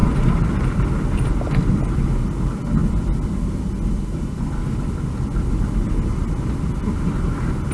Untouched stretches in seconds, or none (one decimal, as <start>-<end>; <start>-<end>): 0.0-7.7